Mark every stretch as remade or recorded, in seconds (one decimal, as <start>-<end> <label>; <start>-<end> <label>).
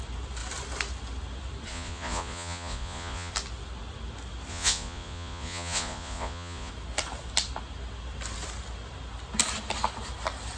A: 0.0-1.7 recorded; 1.7-3.3 remade; 3.3-4.5 recorded; 4.5-6.7 remade; 6.7-10.6 recorded